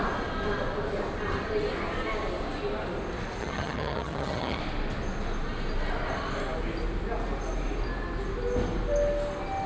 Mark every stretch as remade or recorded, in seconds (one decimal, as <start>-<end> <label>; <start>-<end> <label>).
0.0-3.4 recorded; 3.4-4.6 remade; 4.6-9.7 recorded